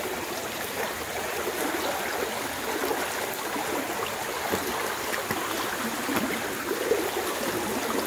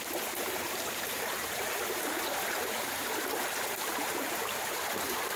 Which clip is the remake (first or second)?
second